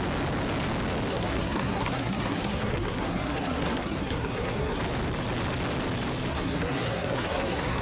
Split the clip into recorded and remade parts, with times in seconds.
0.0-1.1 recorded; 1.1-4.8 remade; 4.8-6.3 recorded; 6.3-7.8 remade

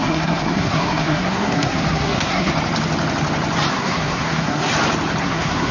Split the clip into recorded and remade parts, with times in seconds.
0.0-2.5 remade; 2.5-3.7 recorded; 3.7-4.7 remade; 4.7-5.2 recorded; 5.2-5.7 remade

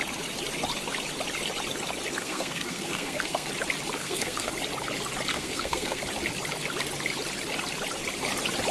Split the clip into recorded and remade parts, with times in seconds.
0.0-2.2 recorded; 2.2-3.5 remade; 3.5-4.0 recorded; 4.0-4.5 remade; 4.5-5.3 recorded; 5.3-6.0 remade; 6.0-8.7 recorded